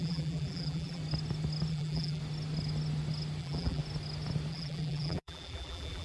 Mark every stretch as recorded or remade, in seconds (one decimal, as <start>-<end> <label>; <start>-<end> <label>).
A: 0.0-1.0 remade; 1.0-1.7 recorded; 1.7-2.2 remade; 2.2-3.4 recorded; 3.4-3.8 remade; 3.8-4.5 recorded; 4.5-6.0 remade